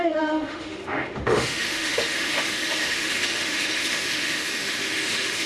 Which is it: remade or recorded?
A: remade